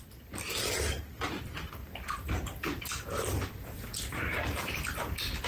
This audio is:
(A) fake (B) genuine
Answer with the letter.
B